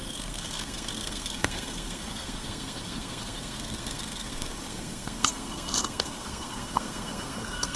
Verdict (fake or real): fake